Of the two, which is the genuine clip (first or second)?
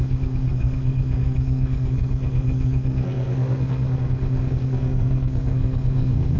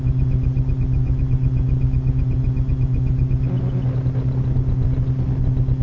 second